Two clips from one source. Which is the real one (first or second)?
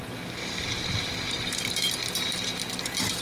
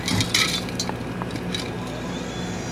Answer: second